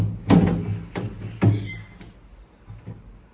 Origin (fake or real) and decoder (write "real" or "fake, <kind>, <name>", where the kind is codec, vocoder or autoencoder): real